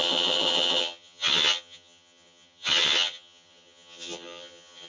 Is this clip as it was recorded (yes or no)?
no